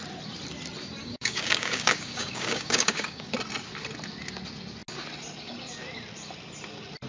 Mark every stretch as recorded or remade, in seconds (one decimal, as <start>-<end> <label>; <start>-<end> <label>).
0.0-1.0 recorded; 1.0-3.3 remade; 3.3-7.1 recorded